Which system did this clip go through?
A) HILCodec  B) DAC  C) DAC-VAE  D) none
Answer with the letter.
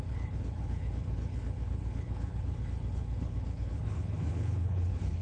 A